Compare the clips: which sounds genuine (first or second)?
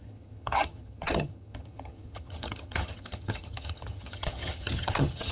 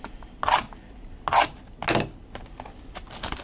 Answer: second